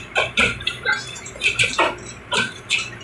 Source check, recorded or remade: remade